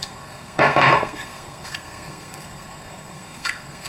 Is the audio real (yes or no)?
no